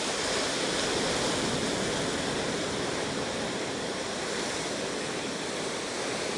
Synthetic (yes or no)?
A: yes